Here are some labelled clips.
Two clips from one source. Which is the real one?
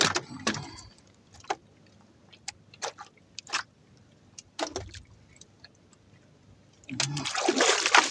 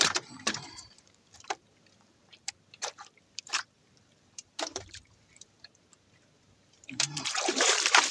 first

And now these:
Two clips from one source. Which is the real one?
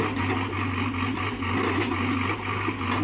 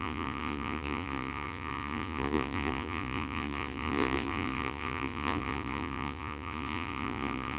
first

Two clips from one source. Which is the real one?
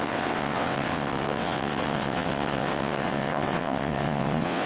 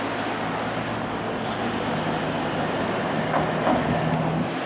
second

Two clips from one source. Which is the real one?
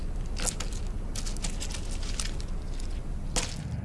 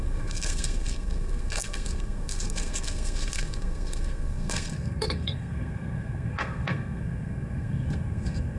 first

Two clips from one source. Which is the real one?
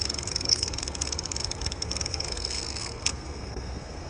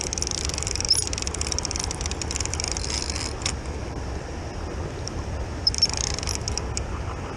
second